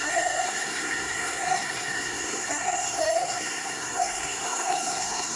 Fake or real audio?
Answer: fake